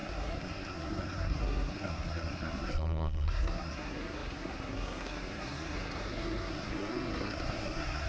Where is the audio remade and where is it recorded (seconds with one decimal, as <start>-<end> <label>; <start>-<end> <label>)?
0.0-8.1 remade